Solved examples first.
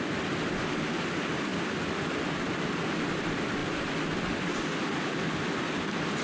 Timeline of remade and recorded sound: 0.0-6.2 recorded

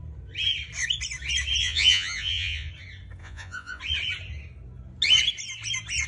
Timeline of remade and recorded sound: 0.0-1.6 recorded; 1.6-2.7 remade; 2.7-3.2 recorded; 3.2-3.8 remade; 3.8-6.1 recorded

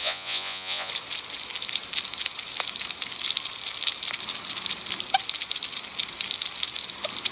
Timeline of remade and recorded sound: 0.0-0.9 remade; 0.9-7.3 recorded

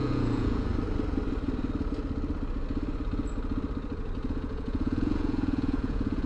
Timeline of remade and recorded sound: 0.0-0.7 remade; 0.7-4.3 recorded; 4.3-6.3 remade